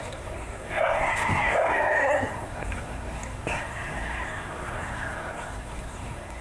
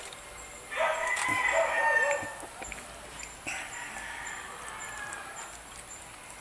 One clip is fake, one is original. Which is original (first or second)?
second